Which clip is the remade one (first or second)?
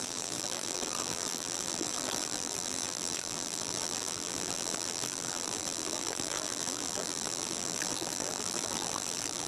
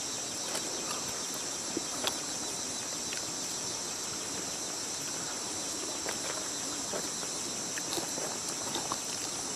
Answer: first